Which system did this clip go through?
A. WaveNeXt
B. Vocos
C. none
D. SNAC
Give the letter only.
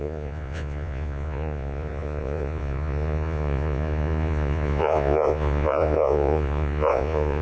B